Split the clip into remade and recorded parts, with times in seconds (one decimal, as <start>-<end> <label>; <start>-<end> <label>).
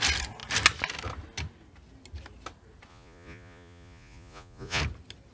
0.0-2.9 recorded; 2.9-4.8 remade; 4.8-5.3 recorded